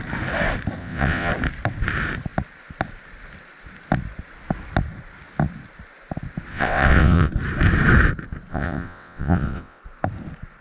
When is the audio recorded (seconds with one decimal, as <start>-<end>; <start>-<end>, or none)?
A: 0.0-0.8; 1.3-6.5; 7.3-8.5; 9.8-10.6